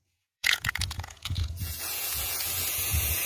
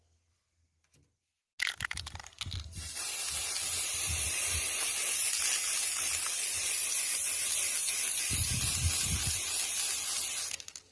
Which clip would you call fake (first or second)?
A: first